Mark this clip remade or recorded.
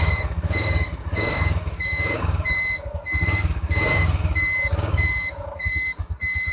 remade